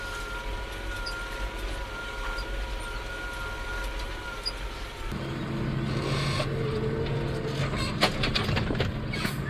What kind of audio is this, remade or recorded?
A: recorded